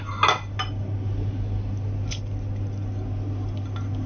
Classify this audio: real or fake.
real